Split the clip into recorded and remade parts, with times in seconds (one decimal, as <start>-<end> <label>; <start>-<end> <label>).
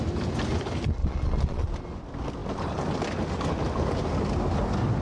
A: 0.0-1.0 recorded; 1.0-1.7 remade; 1.7-5.0 recorded